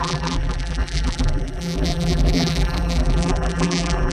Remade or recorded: remade